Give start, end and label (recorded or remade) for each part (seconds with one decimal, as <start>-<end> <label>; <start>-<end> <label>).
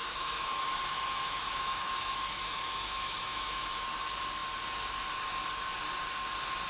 0.0-3.7 remade; 3.7-6.7 recorded